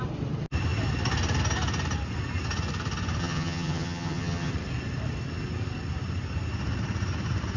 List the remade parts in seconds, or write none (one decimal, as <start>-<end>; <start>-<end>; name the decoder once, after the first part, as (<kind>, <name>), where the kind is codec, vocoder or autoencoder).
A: 3.2-4.5 (vocoder, HiFi-GAN)

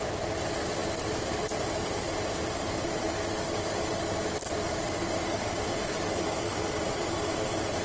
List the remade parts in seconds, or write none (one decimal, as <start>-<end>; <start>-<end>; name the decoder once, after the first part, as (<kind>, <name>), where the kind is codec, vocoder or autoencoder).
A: none